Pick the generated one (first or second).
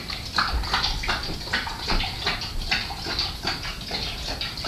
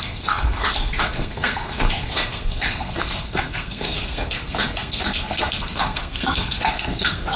second